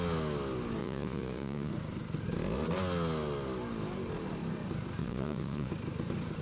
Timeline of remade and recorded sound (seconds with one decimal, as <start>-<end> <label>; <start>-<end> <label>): 0.0-0.8 recorded; 0.8-1.7 remade; 1.7-5.0 recorded; 5.0-5.7 remade; 5.7-6.4 recorded

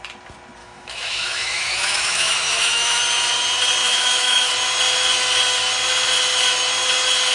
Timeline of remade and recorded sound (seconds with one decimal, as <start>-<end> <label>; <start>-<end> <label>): 0.0-0.6 recorded; 0.6-3.0 remade; 3.0-3.8 recorded; 3.8-4.5 remade; 4.5-7.3 recorded